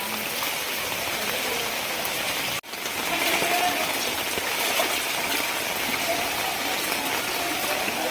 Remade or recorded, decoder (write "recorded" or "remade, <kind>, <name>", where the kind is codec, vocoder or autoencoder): recorded